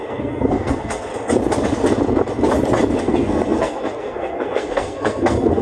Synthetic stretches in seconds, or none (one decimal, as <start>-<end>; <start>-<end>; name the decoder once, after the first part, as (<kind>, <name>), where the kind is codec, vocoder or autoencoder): 0.0-1.1 (codec, SNAC); 3.0-5.6